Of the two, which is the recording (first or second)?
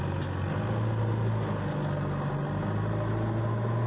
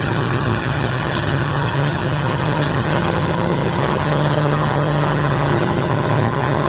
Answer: first